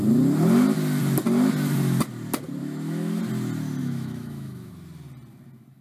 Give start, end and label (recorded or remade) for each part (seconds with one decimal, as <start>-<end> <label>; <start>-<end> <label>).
0.0-2.6 recorded; 2.6-3.2 remade; 3.2-3.8 recorded; 3.8-4.7 remade; 4.7-5.8 recorded